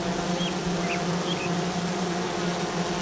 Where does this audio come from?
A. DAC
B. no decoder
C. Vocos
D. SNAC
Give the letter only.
B